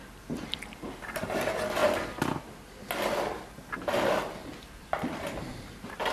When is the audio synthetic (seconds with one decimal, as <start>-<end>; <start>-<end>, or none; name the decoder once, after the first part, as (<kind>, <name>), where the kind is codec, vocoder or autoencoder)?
none